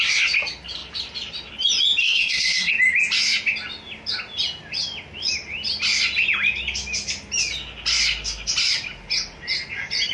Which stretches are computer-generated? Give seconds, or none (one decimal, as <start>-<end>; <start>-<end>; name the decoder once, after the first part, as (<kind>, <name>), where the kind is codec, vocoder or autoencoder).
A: 2.0-2.7 (codec, SNAC)